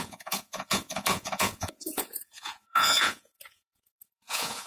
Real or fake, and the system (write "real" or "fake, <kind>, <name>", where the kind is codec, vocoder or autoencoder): fake, vocoder, Vocos